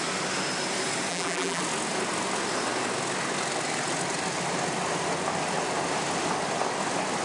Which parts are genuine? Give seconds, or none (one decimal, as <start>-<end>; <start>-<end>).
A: 0.0-1.1; 1.6-7.2